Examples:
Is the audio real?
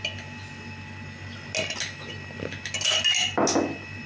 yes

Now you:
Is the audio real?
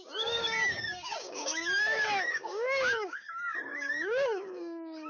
no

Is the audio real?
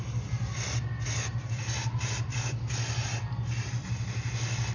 yes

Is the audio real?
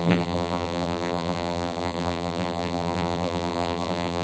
no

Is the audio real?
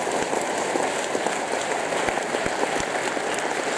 yes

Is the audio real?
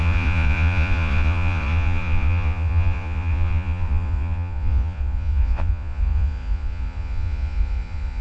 no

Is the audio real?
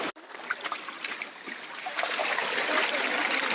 yes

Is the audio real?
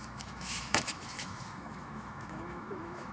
no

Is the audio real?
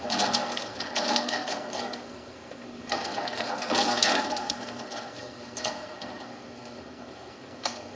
no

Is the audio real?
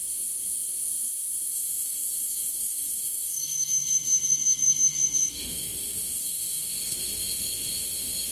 no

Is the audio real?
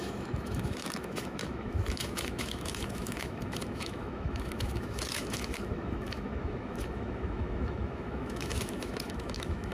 no